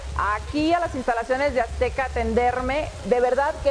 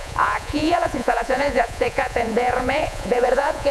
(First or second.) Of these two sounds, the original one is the first